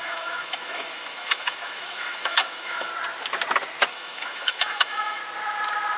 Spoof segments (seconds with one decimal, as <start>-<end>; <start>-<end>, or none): 0.0-2.9; 3.9-5.2